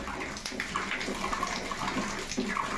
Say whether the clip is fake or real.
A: real